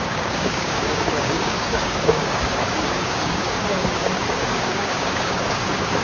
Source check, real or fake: fake